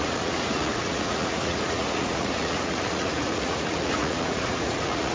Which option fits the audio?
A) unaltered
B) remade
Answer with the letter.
B